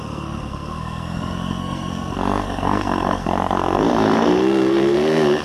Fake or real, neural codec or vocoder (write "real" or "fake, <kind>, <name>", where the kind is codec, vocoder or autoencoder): fake, codec, SNAC